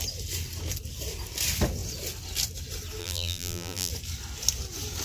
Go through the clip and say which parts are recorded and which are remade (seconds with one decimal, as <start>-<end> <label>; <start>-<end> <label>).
0.0-3.0 recorded; 3.0-3.9 remade; 3.9-5.0 recorded